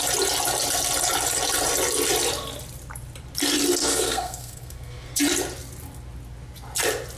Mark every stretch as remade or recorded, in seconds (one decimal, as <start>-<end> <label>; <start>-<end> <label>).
0.0-3.8 recorded; 3.8-5.2 remade; 5.2-7.2 recorded